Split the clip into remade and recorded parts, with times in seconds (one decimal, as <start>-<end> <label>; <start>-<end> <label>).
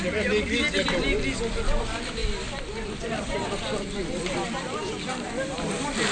0.0-6.1 recorded